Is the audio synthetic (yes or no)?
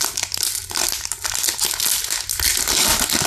no